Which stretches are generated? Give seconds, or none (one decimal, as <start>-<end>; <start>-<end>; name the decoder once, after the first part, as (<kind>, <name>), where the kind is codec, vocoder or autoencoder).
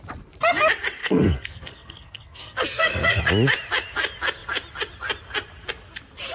1.0-3.2 (codec, SNAC)